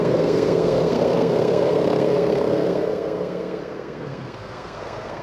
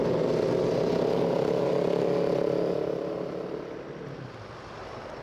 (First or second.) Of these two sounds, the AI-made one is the first